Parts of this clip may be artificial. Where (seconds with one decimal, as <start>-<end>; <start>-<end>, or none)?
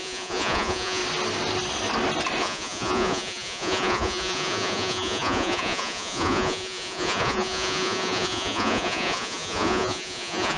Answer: 0.0-1.0; 2.4-10.6